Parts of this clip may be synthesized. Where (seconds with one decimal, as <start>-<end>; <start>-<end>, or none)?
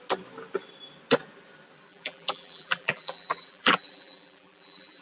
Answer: 1.9-5.0